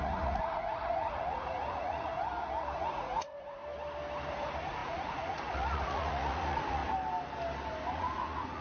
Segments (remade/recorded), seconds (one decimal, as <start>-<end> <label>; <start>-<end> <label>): 0.0-2.1 remade; 2.1-2.8 recorded; 2.8-3.6 remade; 3.6-4.3 recorded; 4.3-6.8 remade; 6.8-7.9 recorded; 7.9-8.6 remade